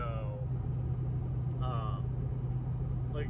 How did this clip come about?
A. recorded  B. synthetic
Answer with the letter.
A